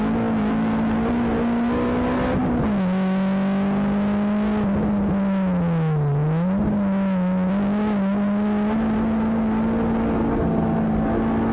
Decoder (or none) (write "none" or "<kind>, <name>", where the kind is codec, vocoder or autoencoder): none